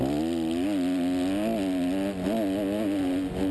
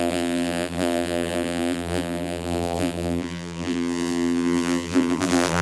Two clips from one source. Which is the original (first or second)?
first